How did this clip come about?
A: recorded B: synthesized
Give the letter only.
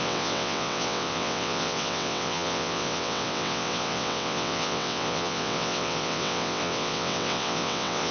B